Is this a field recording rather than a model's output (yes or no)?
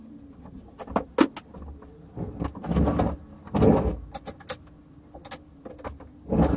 yes